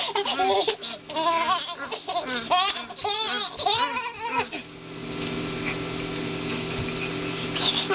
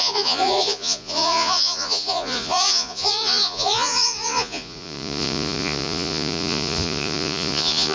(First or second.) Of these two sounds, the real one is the first